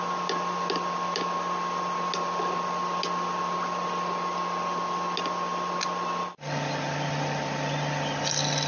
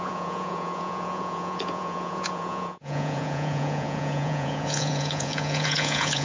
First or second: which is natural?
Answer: first